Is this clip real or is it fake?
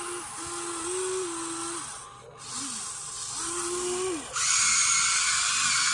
real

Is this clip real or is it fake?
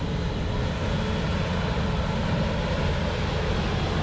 real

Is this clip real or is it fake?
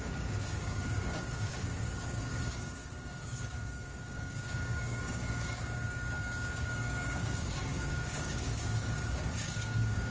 fake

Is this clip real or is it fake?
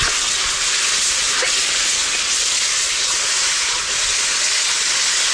real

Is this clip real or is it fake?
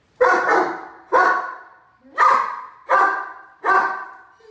real